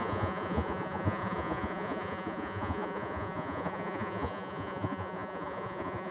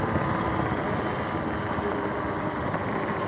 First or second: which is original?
second